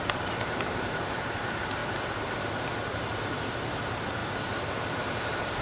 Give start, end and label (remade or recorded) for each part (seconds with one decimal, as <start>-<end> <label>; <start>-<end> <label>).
0.0-1.8 remade; 1.8-2.7 recorded; 2.7-3.1 remade; 3.1-3.7 recorded; 3.7-5.6 remade